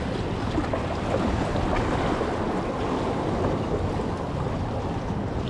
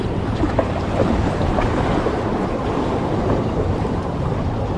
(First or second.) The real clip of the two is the first